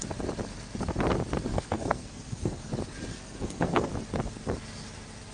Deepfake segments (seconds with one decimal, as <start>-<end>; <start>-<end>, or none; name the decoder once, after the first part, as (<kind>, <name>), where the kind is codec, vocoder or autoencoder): 1.5-2.7 (codec, SNAC); 3.1-3.9